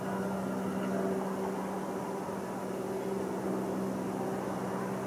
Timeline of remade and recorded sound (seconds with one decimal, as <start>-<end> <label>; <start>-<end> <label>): 0.0-5.1 recorded